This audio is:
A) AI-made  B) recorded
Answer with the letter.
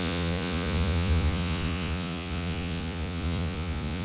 A